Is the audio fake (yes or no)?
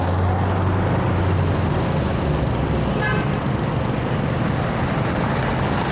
no